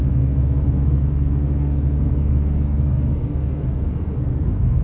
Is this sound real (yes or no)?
no